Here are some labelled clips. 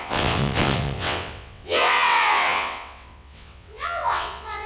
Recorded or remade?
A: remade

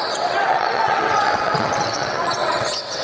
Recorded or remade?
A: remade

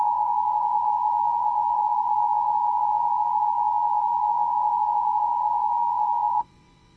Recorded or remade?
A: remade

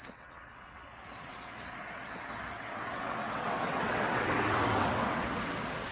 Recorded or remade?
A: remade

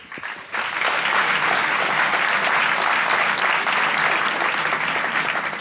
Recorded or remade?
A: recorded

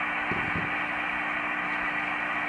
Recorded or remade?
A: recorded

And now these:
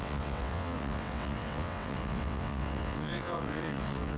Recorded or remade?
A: remade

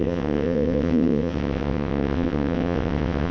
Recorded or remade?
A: remade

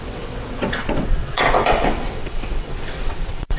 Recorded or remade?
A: remade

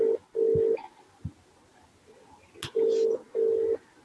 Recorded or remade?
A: recorded